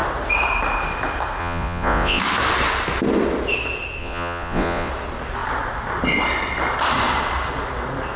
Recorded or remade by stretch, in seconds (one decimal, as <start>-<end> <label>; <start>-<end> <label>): 0.0-1.4 recorded; 1.4-2.2 remade; 2.2-4.0 recorded; 4.0-4.9 remade; 4.9-8.2 recorded